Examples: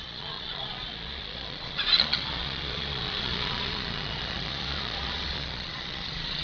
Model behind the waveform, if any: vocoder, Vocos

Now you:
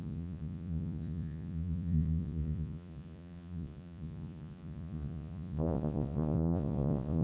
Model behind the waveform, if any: vocoder, Vocos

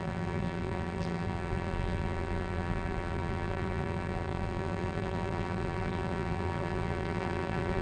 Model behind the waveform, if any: vocoder, BigVGAN v2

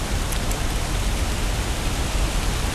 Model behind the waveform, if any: none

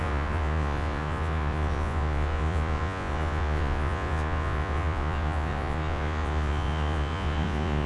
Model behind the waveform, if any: vocoder, Vocos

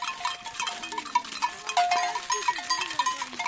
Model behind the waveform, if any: none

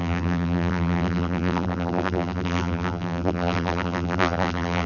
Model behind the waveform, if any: vocoder, BigVGAN v2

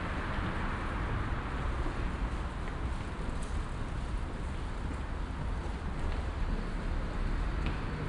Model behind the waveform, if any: none